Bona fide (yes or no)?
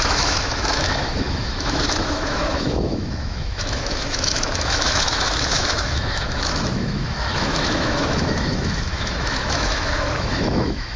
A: no